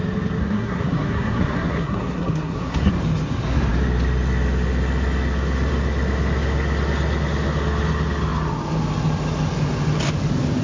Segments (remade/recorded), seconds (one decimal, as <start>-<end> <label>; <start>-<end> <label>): 0.0-0.4 recorded; 0.4-2.9 remade; 2.9-10.6 recorded